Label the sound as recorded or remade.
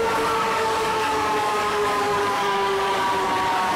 remade